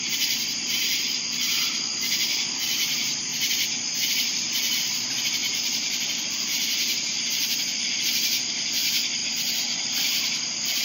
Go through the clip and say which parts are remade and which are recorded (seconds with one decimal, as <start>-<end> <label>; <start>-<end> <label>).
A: 0.0-3.3 remade; 3.3-4.1 recorded; 4.1-9.2 remade; 9.2-10.0 recorded; 10.0-10.8 remade